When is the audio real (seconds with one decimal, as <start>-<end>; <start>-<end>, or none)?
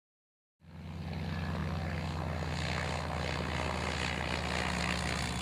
0.0-5.4